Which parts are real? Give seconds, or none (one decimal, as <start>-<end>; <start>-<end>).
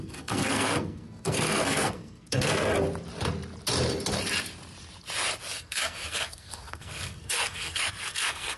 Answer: 2.7-5.4